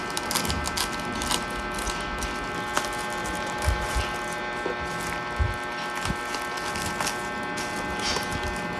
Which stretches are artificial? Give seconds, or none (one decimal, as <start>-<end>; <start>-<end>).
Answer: 3.2-4.0